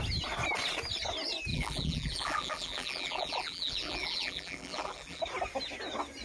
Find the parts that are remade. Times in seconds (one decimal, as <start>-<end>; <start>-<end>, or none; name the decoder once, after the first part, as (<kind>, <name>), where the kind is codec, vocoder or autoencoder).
1.5-5.2 (vocoder, BigVGAN v2)